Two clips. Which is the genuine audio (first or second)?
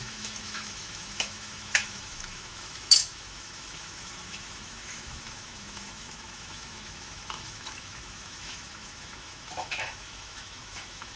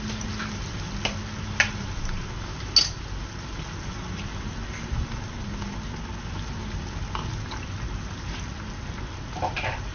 second